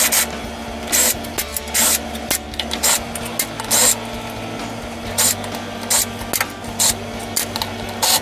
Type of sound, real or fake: real